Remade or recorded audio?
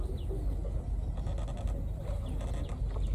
recorded